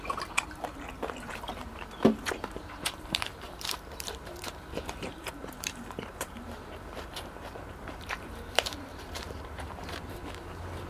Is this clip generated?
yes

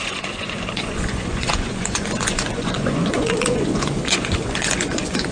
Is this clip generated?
yes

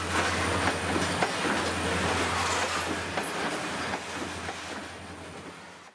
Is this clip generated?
no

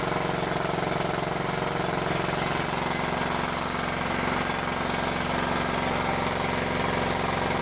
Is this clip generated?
no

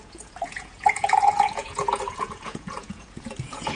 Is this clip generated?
yes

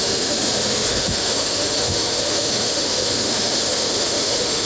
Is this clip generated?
yes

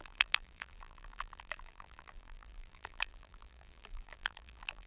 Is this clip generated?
yes